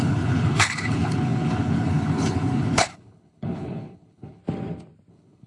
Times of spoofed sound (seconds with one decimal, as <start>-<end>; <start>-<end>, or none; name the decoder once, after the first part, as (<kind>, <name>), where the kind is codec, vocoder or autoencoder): 0.0-4.4 (codec, HILCodec); 5.1-5.5